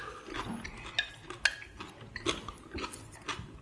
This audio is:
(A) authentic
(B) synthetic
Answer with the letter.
A